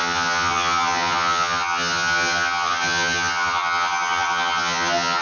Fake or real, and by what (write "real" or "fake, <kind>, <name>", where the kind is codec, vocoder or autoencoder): fake, vocoder, HiFi-GAN